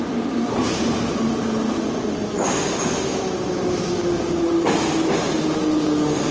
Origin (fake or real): real